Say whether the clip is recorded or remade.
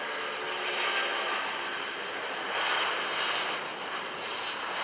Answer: recorded